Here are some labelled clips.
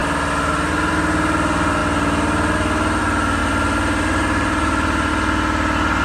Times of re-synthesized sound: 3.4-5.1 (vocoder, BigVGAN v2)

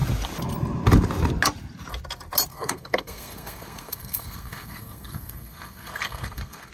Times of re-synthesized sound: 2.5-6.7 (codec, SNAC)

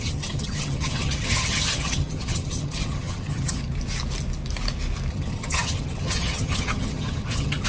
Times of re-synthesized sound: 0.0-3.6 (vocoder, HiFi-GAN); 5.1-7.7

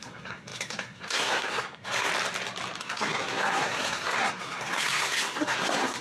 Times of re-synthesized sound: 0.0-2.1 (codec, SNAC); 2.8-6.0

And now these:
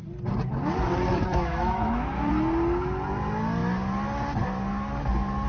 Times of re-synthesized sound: 1.1-2.3 (autoencoder, DAC-VAE)

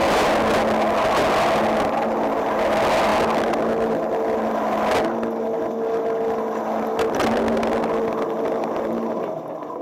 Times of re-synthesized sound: none

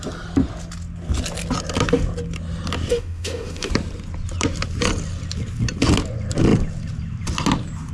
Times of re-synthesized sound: 2.9-3.7 (autoencoder, DAC-VAE)